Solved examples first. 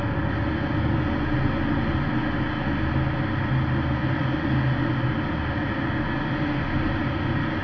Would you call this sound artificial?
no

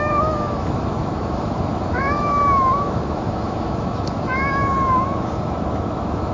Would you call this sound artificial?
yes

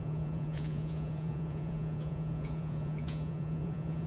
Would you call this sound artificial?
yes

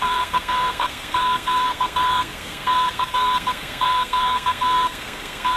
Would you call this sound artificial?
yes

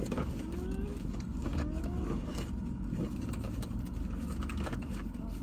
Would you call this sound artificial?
yes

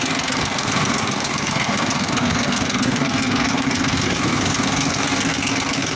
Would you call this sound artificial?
yes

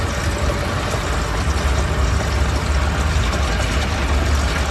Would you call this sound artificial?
no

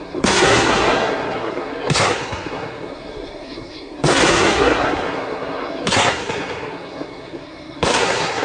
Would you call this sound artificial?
yes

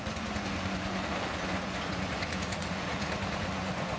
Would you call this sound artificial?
yes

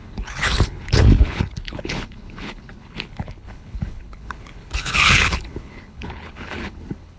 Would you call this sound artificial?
yes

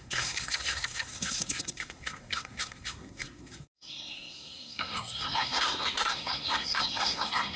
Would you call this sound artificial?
yes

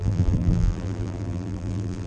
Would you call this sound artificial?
yes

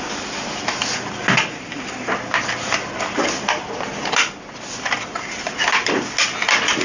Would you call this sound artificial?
no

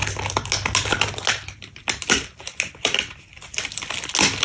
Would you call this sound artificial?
no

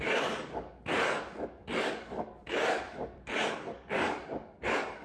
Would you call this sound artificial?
yes